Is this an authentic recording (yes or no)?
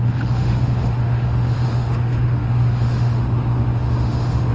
no